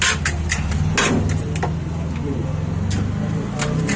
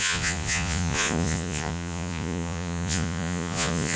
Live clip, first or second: first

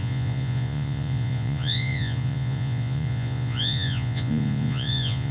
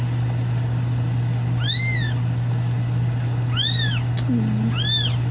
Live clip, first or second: second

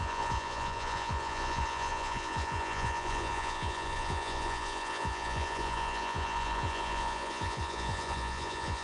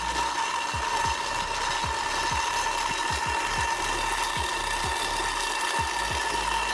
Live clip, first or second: second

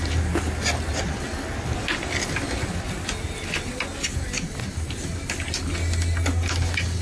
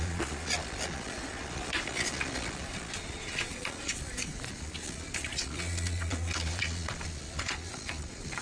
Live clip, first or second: first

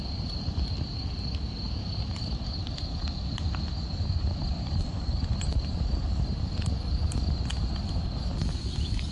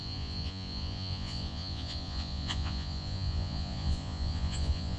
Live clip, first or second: first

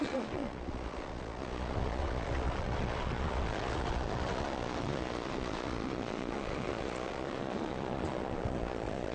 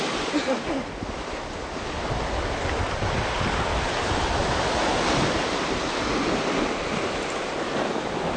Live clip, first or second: second